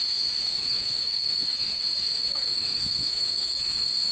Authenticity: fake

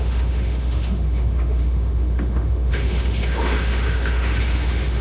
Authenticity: fake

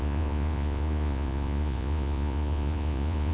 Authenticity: fake